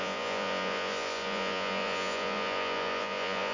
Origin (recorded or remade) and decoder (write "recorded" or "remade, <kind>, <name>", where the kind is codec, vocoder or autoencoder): remade, vocoder, Vocos